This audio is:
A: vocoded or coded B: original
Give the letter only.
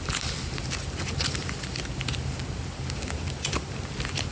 B